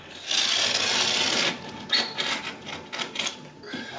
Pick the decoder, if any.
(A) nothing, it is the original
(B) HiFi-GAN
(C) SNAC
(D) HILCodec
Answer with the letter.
A